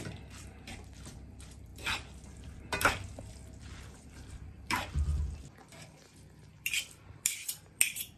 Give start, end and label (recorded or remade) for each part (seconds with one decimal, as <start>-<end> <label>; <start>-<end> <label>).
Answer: 0.0-1.7 remade; 1.7-2.6 recorded; 2.6-3.4 remade; 3.4-3.9 recorded; 3.9-5.1 remade; 5.1-6.6 recorded; 6.6-8.2 remade